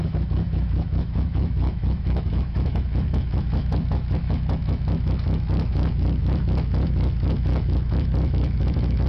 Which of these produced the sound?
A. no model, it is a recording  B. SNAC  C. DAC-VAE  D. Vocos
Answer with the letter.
C